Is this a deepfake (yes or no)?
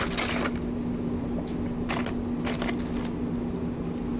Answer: no